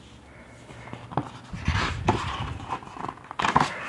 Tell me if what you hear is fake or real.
real